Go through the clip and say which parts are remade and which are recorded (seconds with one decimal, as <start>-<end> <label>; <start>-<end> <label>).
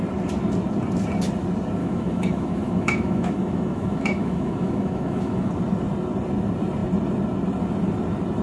0.0-1.8 recorded; 1.8-5.5 remade; 5.5-8.4 recorded